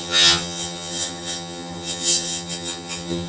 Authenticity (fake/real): fake